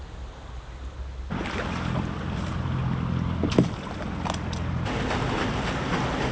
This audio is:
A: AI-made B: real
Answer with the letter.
B